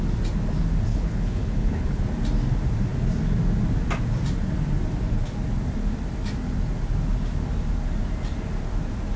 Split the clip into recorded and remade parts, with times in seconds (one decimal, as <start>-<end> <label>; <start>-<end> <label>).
0.0-0.9 recorded; 0.9-2.0 remade; 2.0-9.2 recorded